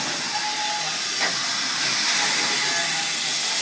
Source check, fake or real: real